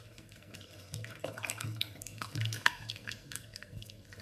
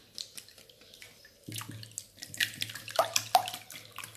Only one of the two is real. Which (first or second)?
second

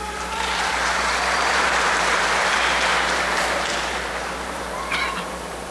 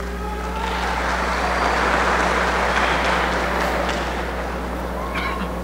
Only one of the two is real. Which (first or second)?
second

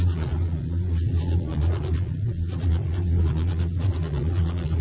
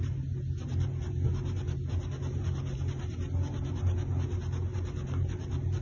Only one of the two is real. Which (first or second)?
second